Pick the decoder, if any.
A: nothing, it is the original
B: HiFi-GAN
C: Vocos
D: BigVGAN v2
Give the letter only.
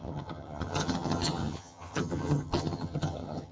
B